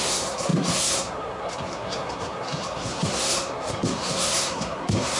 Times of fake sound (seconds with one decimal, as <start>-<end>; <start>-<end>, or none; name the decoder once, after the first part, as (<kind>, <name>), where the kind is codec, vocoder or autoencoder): 0.0-5.2 (codec, SNAC)